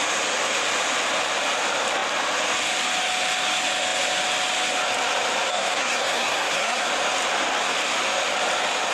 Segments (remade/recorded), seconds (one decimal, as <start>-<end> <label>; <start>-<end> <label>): 0.0-5.5 recorded; 5.5-6.9 remade; 6.9-8.9 recorded